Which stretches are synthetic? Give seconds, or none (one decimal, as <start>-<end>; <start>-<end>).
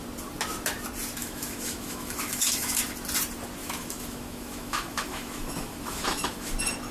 1.2-2.8; 3.6-6.5